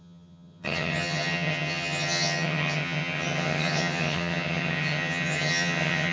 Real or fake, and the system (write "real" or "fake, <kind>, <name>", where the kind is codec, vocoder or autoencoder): fake, vocoder, HiFi-GAN